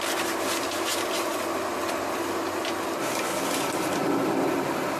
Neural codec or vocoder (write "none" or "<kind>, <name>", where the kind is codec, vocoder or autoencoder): none